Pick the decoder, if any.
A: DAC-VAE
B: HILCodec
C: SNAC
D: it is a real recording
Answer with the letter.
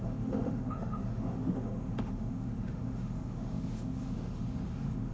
A